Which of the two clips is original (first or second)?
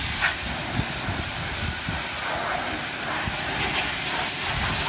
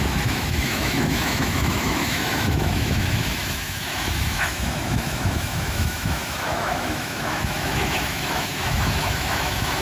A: first